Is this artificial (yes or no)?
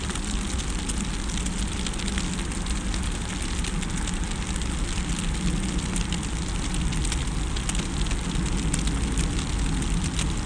no